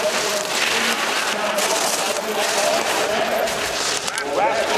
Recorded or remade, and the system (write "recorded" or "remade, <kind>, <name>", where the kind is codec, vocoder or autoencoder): recorded